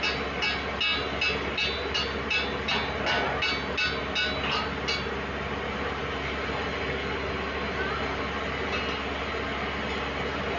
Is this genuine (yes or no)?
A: yes